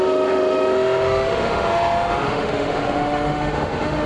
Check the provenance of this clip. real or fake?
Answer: fake